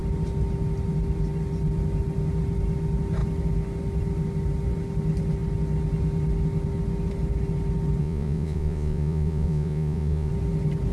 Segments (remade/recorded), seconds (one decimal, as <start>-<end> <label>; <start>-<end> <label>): 0.0-8.0 recorded; 8.0-10.3 remade; 10.3-10.9 recorded